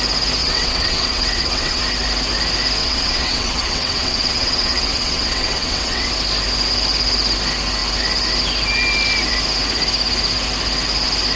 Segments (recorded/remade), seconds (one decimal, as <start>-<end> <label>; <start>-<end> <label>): 0.0-0.4 recorded; 0.4-1.8 remade; 1.8-2.8 recorded; 2.8-6.1 remade; 6.1-11.4 recorded